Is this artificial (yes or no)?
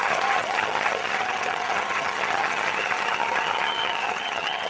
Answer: yes